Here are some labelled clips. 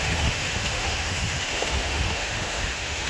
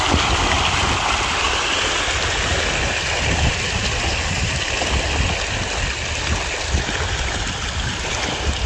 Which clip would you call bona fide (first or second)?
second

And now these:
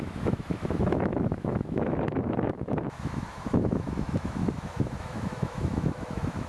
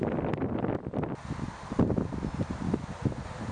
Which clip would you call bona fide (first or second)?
second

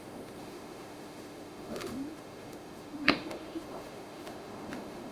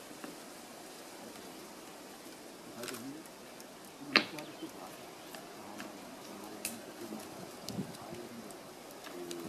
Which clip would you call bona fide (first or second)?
second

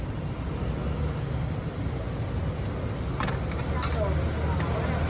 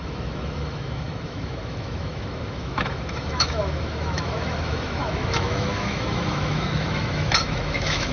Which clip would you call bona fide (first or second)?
first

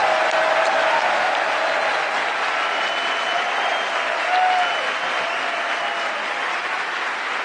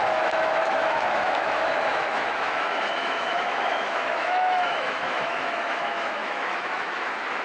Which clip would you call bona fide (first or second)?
first